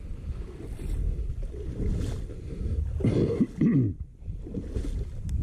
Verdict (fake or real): real